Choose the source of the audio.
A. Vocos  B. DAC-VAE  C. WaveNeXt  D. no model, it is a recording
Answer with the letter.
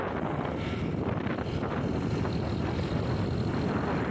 D